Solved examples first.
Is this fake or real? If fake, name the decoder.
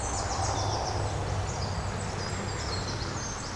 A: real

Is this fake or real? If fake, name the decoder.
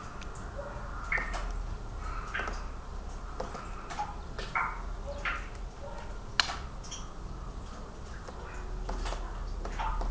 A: real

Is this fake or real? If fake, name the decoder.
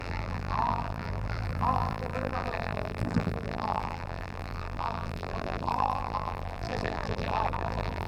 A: fake, vocoder, BigVGAN v2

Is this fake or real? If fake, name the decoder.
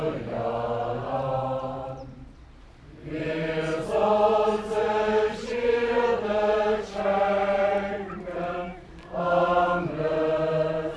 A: fake, vocoder, BigVGAN v2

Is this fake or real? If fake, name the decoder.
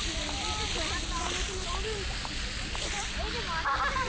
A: real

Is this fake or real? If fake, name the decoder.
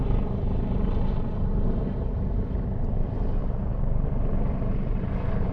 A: fake, vocoder, BigVGAN v2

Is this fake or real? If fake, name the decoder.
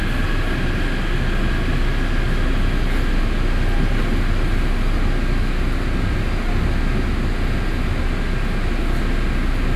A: real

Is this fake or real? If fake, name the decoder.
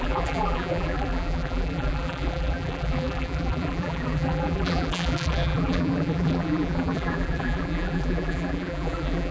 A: fake, vocoder, BigVGAN v2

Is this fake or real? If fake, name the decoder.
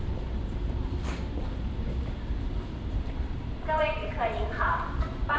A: fake, vocoder, BigVGAN v2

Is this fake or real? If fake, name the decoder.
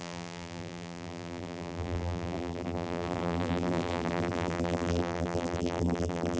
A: fake, vocoder, BigVGAN v2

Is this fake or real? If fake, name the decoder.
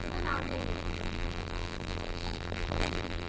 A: fake, vocoder, BigVGAN v2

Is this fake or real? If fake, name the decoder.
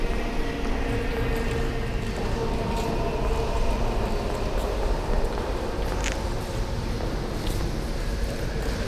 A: real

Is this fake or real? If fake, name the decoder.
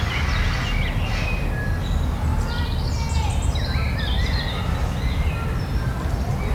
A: real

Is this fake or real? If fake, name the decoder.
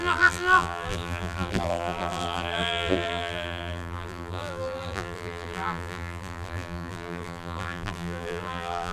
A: fake, vocoder, BigVGAN v2